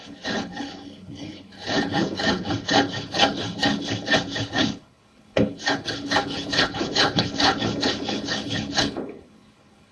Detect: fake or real fake